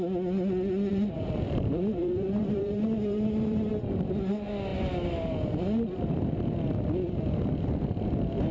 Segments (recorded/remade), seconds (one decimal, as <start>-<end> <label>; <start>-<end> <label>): 0.0-0.9 recorded; 0.9-3.7 remade; 3.7-8.5 recorded